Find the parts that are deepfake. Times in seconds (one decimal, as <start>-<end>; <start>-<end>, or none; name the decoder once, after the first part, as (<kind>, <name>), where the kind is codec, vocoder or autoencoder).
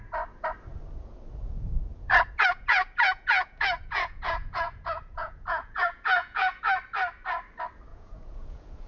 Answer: 1.9-6.6 (vocoder, Vocos); 7.9-8.9